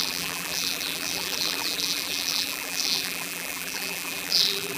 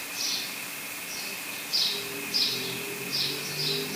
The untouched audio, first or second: second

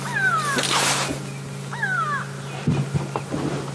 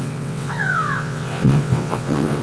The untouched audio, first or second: first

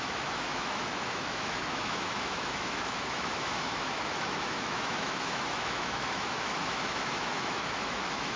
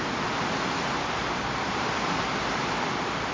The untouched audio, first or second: second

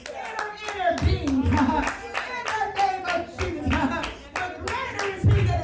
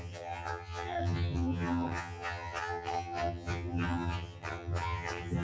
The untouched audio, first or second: first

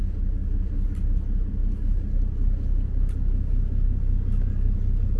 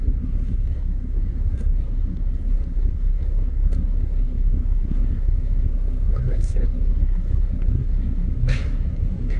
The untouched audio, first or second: first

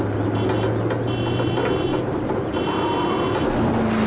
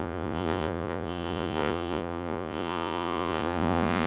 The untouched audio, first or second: first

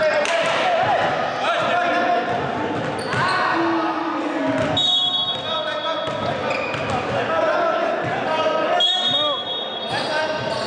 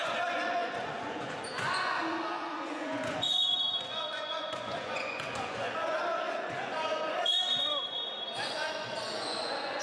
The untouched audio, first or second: first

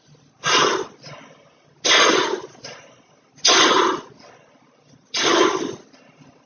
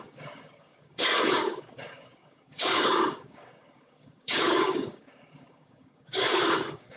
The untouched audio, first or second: first